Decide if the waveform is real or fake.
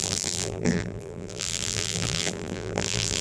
fake